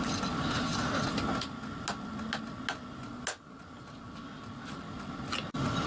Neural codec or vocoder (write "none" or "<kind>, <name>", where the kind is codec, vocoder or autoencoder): none